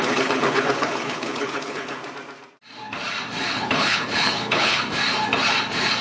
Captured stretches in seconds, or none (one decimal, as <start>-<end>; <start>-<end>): 2.0-3.5; 4.8-6.0